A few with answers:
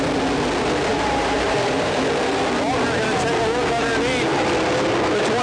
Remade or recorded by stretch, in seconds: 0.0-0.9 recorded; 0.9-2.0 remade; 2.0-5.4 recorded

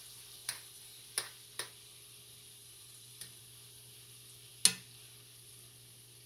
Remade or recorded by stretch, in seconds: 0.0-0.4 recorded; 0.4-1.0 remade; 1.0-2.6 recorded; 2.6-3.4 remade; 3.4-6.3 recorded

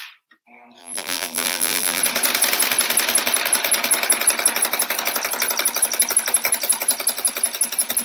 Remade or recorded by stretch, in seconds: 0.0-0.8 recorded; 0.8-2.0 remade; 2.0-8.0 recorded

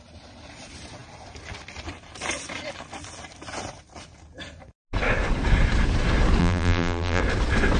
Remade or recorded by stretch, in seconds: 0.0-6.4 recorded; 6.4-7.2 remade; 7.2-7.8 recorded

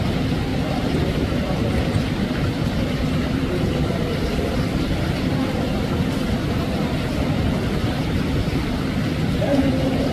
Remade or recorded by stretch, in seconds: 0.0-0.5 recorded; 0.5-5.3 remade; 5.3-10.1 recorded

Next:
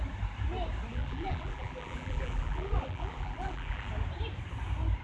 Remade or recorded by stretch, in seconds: 0.0-0.9 recorded; 0.9-3.9 remade; 3.9-5.0 recorded

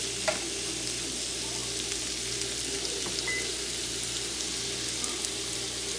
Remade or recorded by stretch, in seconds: 0.0-6.0 recorded